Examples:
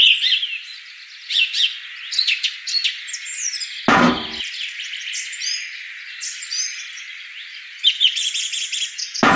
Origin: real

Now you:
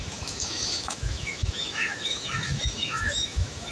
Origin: fake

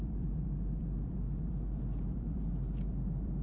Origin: fake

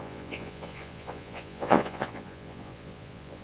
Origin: fake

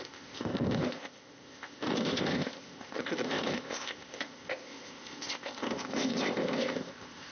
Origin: fake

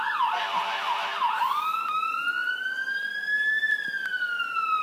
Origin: real